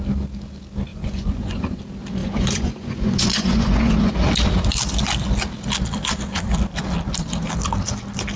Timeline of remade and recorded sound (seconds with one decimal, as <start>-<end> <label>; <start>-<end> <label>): 0.0-0.9 recorded; 0.9-1.8 remade; 1.8-2.2 recorded; 2.2-4.1 remade; 4.1-8.4 recorded